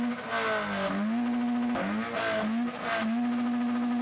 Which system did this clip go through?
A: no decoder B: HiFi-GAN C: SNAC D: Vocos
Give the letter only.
A